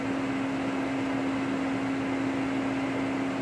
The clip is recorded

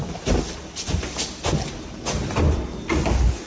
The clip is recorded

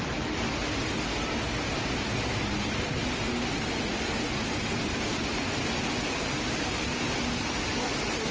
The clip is recorded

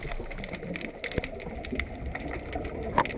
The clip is remade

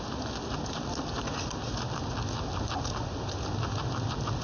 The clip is recorded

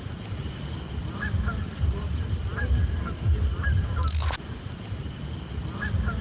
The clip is recorded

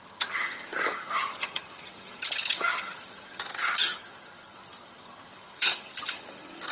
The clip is remade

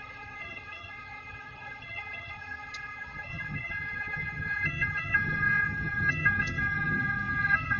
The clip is remade